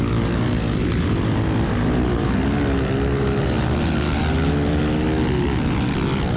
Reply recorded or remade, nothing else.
recorded